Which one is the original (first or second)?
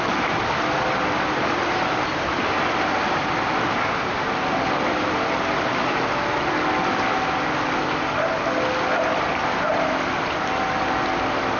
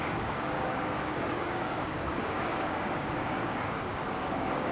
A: first